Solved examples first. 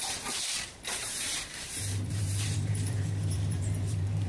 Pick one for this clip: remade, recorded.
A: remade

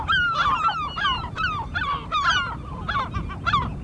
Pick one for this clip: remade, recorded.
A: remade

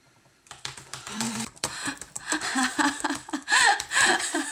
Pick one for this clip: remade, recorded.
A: remade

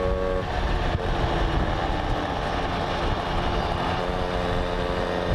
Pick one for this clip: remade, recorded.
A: recorded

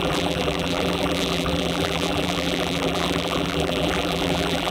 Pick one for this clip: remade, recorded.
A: remade